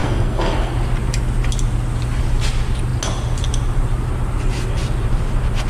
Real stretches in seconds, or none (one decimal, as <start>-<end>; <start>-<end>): 0.7-5.7